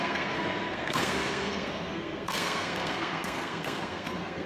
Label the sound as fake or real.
fake